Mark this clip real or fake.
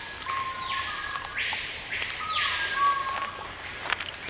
real